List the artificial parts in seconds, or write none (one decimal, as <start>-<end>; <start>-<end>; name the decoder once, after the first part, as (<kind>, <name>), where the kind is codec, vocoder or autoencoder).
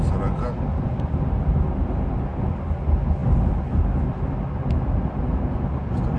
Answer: none